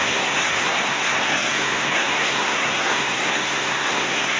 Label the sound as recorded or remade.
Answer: remade